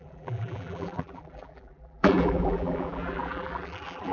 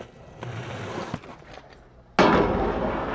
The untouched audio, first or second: second